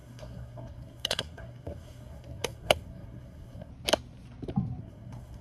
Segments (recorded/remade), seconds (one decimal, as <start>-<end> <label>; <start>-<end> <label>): 0.0-3.7 remade; 3.7-4.8 recorded; 4.8-5.4 remade